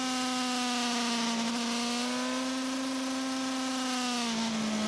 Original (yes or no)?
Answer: yes